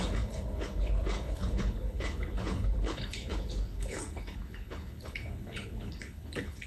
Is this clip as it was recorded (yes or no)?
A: no